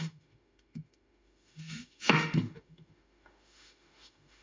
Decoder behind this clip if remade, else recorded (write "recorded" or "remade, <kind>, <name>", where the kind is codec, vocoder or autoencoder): remade, autoencoder, DAC-VAE